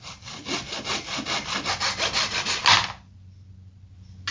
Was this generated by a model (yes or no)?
no